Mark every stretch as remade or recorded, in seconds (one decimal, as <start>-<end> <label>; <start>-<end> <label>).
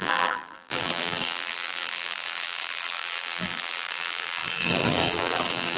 0.0-5.8 remade